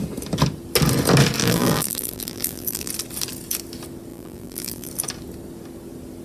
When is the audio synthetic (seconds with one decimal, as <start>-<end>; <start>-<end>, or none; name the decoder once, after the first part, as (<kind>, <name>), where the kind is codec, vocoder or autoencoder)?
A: 1.4-2.9 (vocoder, BigVGAN v2); 4.1-4.9